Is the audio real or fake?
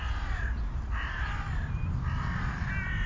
real